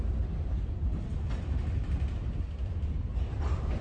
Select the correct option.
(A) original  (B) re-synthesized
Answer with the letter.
A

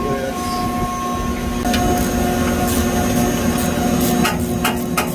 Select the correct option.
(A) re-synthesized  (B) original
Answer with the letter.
B